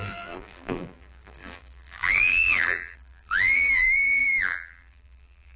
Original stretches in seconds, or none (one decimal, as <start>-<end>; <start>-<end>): none